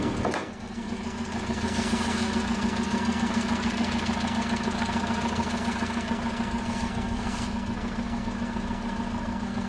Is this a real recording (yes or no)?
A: no